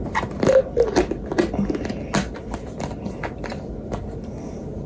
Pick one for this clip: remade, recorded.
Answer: recorded